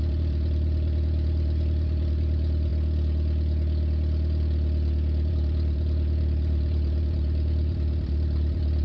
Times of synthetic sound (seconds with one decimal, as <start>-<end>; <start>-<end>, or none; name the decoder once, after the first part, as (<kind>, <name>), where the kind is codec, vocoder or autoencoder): 0.0-2.7 (vocoder, BigVGAN v2); 5.3-8.8